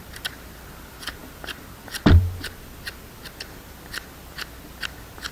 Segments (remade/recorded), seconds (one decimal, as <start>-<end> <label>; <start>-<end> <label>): 0.0-5.3 recorded